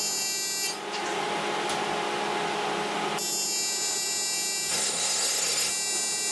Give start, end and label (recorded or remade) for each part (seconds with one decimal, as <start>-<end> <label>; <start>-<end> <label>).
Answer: 0.0-4.7 recorded; 4.7-5.7 remade; 5.7-6.3 recorded